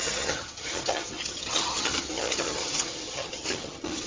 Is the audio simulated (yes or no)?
yes